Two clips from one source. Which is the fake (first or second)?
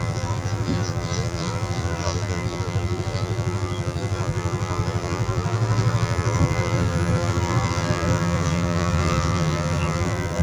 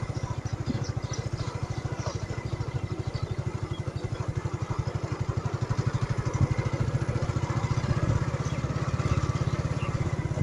first